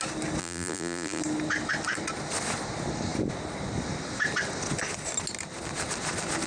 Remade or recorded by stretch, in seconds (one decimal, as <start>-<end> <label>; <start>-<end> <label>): 0.0-0.4 recorded; 0.4-1.2 remade; 1.2-6.5 recorded